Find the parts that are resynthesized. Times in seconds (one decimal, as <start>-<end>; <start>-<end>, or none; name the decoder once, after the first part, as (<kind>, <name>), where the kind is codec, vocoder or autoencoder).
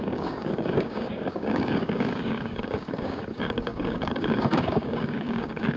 0.0-5.8 (codec, DAC)